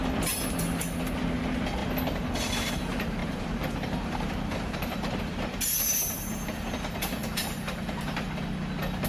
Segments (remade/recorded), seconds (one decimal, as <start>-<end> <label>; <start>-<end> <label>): 0.0-3.2 recorded; 3.2-5.2 remade; 5.2-7.2 recorded; 7.2-8.0 remade; 8.0-9.1 recorded